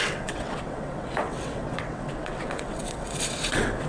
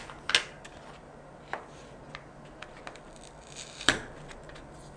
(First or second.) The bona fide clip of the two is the second